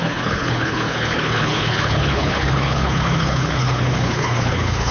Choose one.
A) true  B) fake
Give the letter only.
B